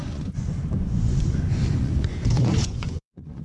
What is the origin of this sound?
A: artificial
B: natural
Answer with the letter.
A